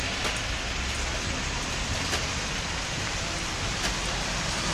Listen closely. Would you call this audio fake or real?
real